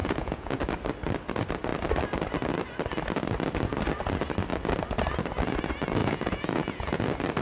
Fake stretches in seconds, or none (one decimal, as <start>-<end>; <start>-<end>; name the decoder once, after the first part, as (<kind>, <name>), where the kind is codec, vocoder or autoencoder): 0.0-0.6 (vocoder, Vocos); 6.0-7.0